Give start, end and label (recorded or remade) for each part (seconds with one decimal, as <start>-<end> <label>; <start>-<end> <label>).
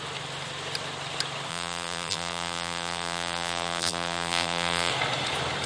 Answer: 0.0-1.5 recorded; 1.5-4.9 remade; 4.9-5.7 recorded